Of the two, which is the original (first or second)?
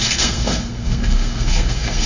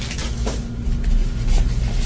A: second